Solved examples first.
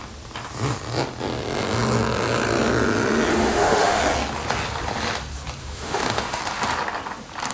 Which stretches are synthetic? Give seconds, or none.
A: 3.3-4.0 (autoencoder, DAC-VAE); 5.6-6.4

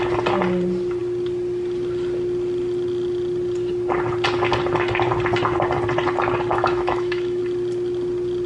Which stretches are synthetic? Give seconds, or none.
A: 6.5-7.4 (autoencoder, DAC-VAE)

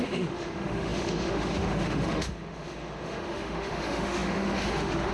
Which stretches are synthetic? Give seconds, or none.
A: 0.0-5.1 (autoencoder, DAC-VAE)

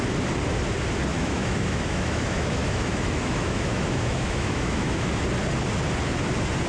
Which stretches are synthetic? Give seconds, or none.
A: 1.1-5.1 (autoencoder, DAC-VAE)

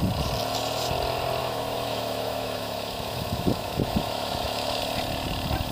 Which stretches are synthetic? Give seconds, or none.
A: 1.4-4.8 (autoencoder, DAC-VAE)

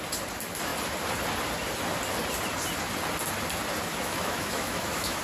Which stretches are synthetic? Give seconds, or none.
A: 3.9-5.2 (autoencoder, DAC-VAE)

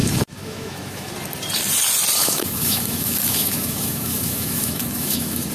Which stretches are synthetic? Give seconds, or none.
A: 0.0-1.1 (autoencoder, DAC-VAE); 2.2-5.5

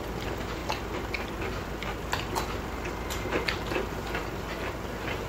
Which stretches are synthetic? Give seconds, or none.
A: none